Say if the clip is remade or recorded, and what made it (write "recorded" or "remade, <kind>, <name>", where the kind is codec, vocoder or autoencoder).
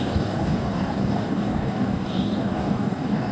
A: remade, codec, DAC